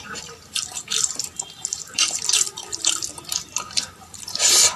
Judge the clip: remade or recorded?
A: remade